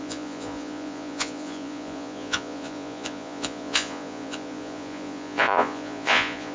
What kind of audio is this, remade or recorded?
remade